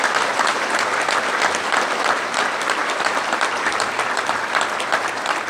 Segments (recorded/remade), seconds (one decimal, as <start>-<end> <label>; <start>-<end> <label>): 0.0-5.5 recorded